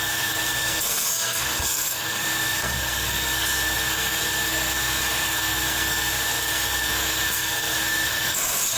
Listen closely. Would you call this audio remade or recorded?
remade